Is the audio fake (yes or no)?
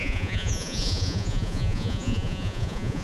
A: yes